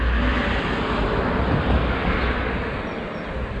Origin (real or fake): real